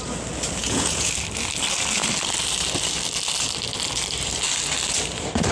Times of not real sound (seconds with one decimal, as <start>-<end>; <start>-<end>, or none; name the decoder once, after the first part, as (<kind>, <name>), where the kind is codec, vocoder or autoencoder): 0.6-1.1 (vocoder, Vocos)